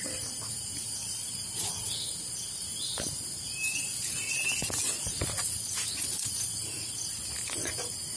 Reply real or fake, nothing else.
real